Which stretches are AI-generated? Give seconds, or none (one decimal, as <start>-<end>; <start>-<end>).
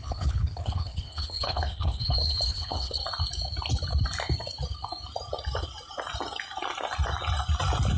0.0-3.0